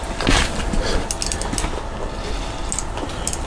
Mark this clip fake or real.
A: real